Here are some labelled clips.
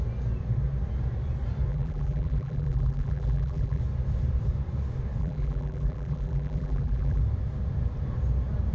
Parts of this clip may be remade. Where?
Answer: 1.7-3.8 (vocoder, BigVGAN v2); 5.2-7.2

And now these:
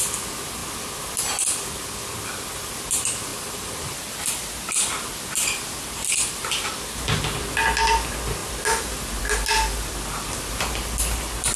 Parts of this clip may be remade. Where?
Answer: none